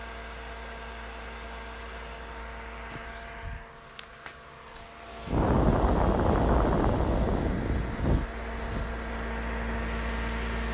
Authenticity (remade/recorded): recorded